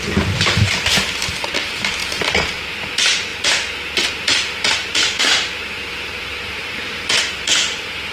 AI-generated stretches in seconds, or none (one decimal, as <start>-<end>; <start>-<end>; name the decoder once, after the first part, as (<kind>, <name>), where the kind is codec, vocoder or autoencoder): 0.0-2.0 (vocoder, BigVGAN v2); 2.7-3.3; 4.1-8.1